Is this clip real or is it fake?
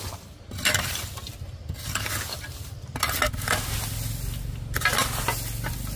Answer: real